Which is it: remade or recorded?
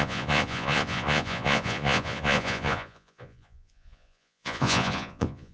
remade